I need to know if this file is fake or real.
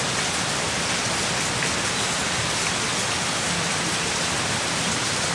real